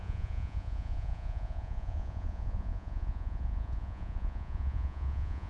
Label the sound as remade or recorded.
remade